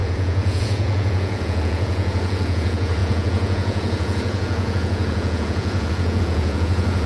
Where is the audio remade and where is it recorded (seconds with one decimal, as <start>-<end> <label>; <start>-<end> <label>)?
0.0-7.1 remade